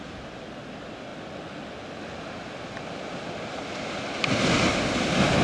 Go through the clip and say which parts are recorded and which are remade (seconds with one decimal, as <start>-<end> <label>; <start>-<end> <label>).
0.0-5.4 recorded